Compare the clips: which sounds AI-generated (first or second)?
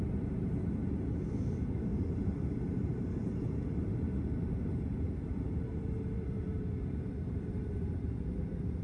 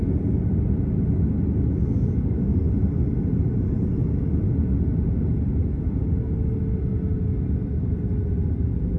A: first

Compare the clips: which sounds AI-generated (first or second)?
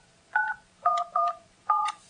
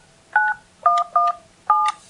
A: first